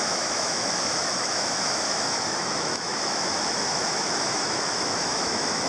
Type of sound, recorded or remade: remade